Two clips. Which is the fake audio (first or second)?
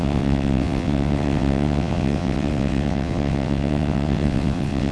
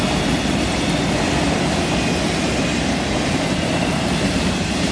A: first